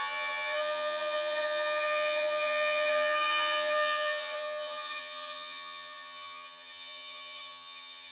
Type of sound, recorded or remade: remade